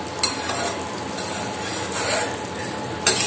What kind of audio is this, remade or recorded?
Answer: recorded